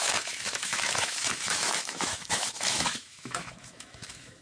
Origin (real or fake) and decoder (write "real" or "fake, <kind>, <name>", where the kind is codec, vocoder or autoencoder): fake, autoencoder, DAC-VAE